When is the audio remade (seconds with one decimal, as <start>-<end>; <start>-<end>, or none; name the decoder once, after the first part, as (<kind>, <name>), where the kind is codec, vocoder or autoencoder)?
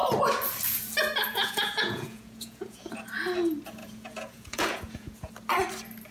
1.3-2.9 (vocoder, Vocos); 3.8-5.3